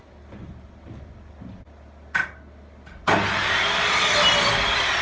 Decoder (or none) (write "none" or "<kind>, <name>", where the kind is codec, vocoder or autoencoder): none